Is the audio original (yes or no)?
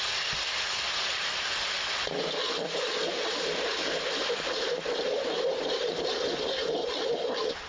yes